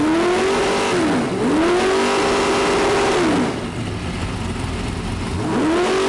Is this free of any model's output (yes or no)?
yes